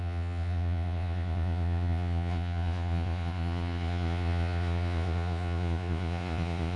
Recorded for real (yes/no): no